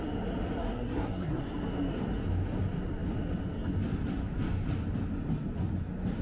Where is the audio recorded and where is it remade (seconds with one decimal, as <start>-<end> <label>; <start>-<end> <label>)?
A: 0.0-0.6 recorded; 0.6-1.4 remade; 1.4-6.2 recorded